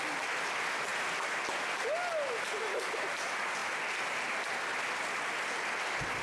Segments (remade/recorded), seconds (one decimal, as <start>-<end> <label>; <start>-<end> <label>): 0.0-6.2 recorded